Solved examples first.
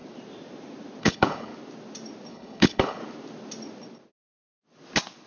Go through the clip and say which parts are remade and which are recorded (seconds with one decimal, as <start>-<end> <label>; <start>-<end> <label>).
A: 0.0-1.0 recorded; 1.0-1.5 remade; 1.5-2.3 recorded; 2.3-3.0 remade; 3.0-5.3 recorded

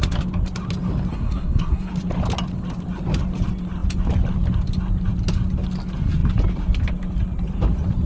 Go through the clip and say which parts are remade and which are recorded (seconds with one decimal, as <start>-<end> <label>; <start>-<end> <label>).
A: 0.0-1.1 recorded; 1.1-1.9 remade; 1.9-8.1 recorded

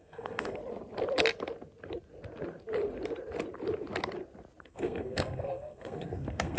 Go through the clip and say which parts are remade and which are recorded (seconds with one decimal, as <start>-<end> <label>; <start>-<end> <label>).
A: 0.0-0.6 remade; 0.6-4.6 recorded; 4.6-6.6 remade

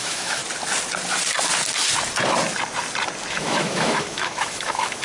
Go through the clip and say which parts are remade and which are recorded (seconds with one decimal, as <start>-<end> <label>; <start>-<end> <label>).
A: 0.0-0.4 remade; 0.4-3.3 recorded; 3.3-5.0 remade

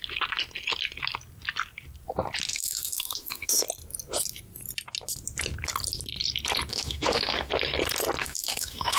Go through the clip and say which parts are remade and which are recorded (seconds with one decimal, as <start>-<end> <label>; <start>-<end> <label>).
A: 0.0-2.5 recorded; 2.5-3.5 remade; 3.5-6.7 recorded; 6.7-7.5 remade; 7.5-8.2 recorded; 8.2-9.0 remade

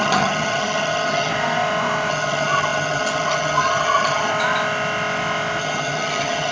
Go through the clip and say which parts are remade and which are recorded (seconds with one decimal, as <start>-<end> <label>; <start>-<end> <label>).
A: 0.0-1.3 remade; 1.3-2.1 recorded; 2.1-4.3 remade; 4.3-5.6 recorded; 5.6-6.5 remade

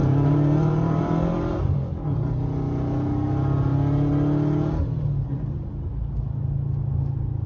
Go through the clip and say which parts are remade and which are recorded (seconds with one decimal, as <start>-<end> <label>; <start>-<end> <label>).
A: 0.0-1.9 remade; 1.9-7.5 recorded

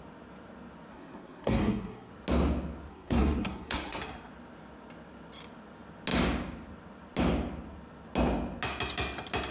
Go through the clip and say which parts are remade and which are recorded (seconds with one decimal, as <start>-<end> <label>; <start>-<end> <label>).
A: 0.0-0.9 recorded; 0.9-2.1 remade; 2.1-2.9 recorded; 2.9-4.0 remade; 4.0-9.5 recorded